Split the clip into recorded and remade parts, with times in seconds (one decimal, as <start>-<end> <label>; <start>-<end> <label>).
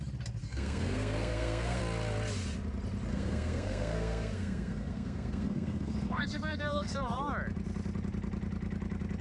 0.0-0.4 recorded; 0.4-1.8 remade; 1.8-3.1 recorded; 3.1-7.3 remade; 7.3-9.2 recorded